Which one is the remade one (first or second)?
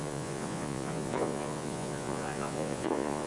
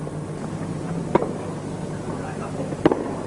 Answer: first